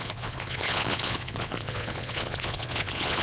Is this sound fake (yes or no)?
yes